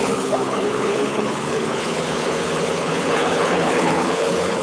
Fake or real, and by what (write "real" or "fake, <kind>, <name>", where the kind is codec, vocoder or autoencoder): fake, codec, HILCodec